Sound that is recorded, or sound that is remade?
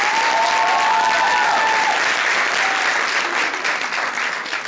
recorded